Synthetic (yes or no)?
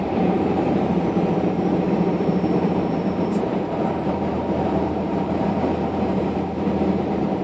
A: yes